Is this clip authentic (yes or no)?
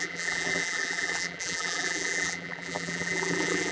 no